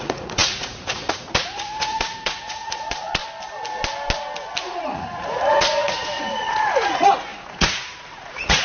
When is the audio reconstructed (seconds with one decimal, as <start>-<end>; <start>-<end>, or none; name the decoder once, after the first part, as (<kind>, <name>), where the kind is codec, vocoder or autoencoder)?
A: 0.0-3.2 (vocoder, Vocos); 4.6-8.6